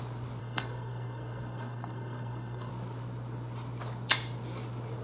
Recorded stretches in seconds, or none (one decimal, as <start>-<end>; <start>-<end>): 0.0-0.4; 2.7-5.0